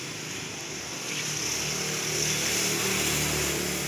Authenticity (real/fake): real